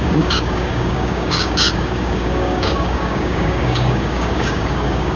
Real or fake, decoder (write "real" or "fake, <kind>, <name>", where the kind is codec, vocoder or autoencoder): fake, codec, DAC